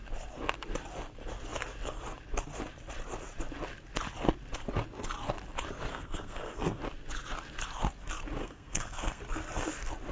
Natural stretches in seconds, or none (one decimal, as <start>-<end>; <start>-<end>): 0.0-5.9; 6.8-8.4; 9.2-10.1